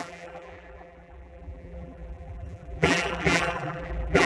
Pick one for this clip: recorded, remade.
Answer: remade